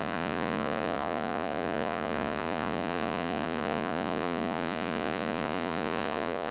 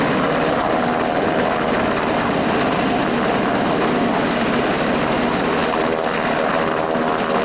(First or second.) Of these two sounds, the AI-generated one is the first